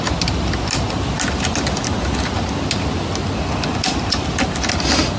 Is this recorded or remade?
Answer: recorded